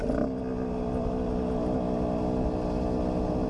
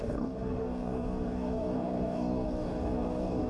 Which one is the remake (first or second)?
second